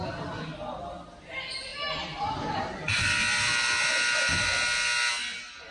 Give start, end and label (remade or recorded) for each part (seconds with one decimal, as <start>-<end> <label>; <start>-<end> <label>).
0.0-5.7 recorded